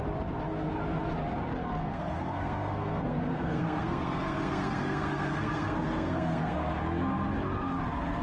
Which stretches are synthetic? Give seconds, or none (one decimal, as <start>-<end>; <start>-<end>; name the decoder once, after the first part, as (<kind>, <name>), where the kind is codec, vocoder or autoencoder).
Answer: 1.8-6.7 (codec, SNAC)